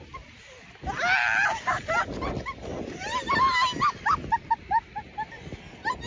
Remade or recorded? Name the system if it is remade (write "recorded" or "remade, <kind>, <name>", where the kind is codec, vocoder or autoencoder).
recorded